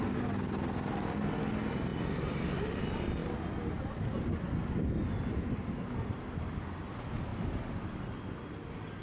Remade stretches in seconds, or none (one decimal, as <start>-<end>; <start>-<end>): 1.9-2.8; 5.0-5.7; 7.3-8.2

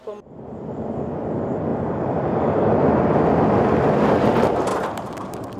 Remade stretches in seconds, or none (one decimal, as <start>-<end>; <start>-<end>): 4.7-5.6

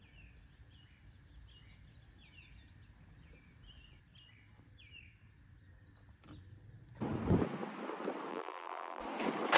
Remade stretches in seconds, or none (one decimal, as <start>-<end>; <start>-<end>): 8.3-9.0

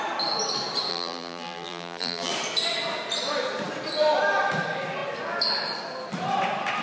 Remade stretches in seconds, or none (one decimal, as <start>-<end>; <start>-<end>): 0.9-2.3

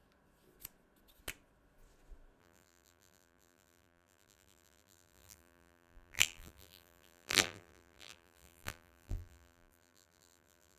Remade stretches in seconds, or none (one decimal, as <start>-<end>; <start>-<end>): 2.4-10.8

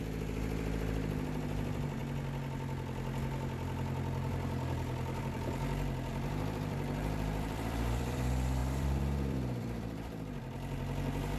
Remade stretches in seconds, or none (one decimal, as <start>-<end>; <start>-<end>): 0.0-2.0; 5.2-11.4

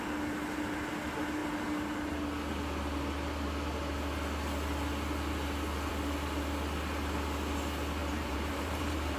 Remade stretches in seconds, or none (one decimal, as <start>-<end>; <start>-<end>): 8.0-9.2

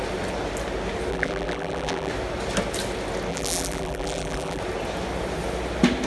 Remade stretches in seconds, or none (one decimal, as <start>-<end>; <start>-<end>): 1.1-2.1; 3.3-4.6